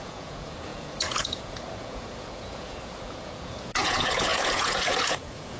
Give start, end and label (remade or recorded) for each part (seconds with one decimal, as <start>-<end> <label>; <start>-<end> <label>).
0.0-5.6 remade